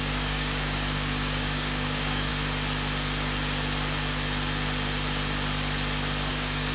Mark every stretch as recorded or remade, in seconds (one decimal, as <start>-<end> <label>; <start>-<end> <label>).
0.0-2.3 remade; 2.3-6.3 recorded; 6.3-6.7 remade